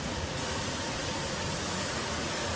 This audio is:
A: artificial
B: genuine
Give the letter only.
A